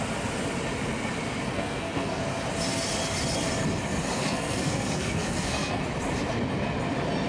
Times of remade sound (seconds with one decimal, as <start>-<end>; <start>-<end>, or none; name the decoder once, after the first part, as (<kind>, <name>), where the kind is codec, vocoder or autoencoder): 1.4-2.2 (codec, SNAC); 4.2-5.8